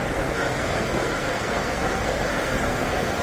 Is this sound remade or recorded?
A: remade